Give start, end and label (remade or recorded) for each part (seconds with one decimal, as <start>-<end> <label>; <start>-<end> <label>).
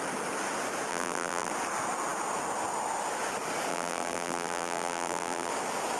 0.0-0.9 recorded; 0.9-1.5 remade; 1.5-3.7 recorded; 3.7-5.5 remade; 5.5-6.0 recorded